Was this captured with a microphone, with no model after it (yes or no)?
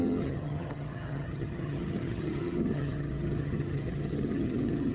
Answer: no